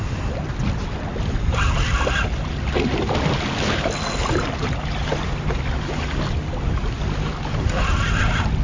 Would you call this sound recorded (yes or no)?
yes